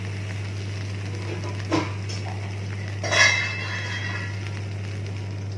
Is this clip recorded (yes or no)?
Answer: yes